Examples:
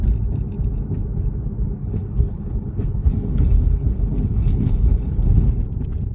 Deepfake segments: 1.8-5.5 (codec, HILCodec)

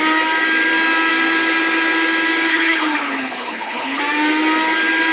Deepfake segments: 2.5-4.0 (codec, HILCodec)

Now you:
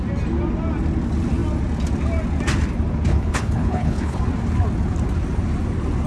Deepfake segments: 3.1-4.2 (codec, HILCodec)

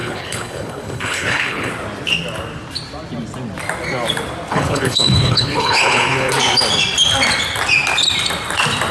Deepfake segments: 0.0-1.7 (codec, HILCodec); 4.5-6.3